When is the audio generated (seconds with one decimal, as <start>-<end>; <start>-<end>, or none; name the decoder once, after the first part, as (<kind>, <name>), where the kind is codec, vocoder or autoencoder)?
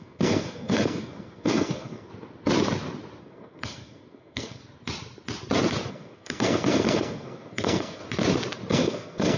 0.0-2.1 (codec, SNAC); 3.2-4.6; 5.9-8.0; 8.7-9.4